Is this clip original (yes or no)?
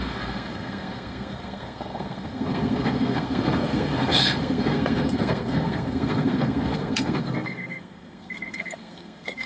no